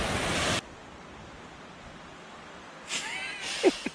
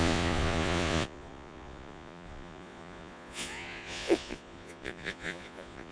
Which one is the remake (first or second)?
second